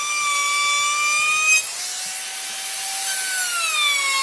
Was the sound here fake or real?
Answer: real